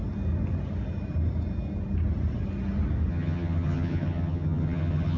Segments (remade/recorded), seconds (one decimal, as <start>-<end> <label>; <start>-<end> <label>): 0.0-3.1 recorded; 3.1-5.2 remade